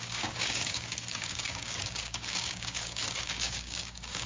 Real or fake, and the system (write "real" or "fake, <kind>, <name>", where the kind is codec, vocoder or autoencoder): fake, codec, DAC